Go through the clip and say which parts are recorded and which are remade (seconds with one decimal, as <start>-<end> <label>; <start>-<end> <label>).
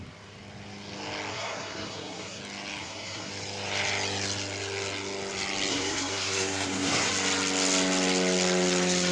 0.0-1.3 recorded; 1.3-2.4 remade; 2.4-2.8 recorded; 2.8-3.3 remade; 3.3-5.7 recorded; 5.7-7.1 remade; 7.1-9.1 recorded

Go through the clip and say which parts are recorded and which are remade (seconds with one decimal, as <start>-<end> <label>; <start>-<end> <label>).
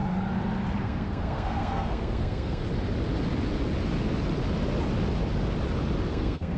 0.0-0.8 recorded; 0.8-2.6 remade; 2.6-6.1 recorded; 6.1-6.6 remade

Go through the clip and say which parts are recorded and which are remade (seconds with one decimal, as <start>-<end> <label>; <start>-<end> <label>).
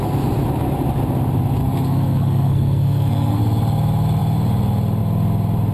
0.0-1.6 recorded; 1.6-3.4 remade; 3.4-5.7 recorded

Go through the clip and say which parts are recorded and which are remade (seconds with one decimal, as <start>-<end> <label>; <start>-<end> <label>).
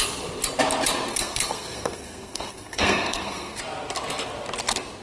0.0-1.1 recorded; 1.1-3.6 remade; 3.6-5.0 recorded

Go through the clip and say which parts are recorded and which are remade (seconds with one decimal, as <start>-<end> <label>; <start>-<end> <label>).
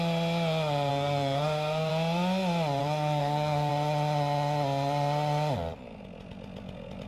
0.0-0.9 recorded; 0.9-1.9 remade; 1.9-2.8 recorded; 2.8-3.7 remade; 3.7-7.1 recorded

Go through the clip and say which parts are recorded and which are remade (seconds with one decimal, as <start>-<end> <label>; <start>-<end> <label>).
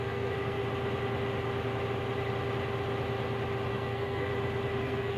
0.0-0.6 remade; 0.6-3.7 recorded; 3.7-4.3 remade; 4.3-4.8 recorded; 4.8-5.2 remade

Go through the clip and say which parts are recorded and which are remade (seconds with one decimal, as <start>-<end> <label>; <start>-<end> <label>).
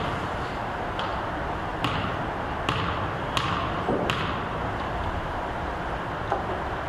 0.0-6.9 recorded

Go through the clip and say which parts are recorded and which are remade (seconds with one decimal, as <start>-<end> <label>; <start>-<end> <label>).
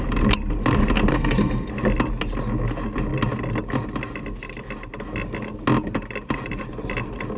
0.0-1.1 recorded; 1.1-1.7 remade; 1.7-7.4 recorded